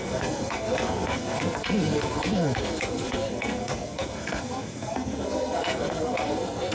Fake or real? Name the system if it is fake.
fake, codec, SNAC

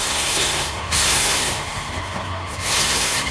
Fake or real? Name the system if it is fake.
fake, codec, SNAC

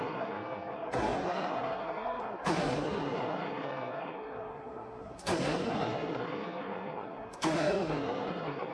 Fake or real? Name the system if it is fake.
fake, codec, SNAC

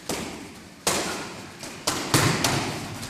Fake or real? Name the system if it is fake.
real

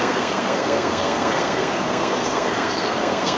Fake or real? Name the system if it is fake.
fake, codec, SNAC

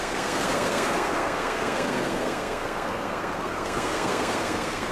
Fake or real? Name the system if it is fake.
fake, codec, SNAC